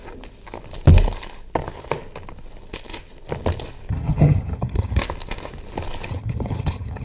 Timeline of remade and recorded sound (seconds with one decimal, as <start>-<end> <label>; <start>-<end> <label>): 0.0-3.9 recorded; 3.9-5.0 remade; 5.0-6.1 recorded; 6.1-7.0 remade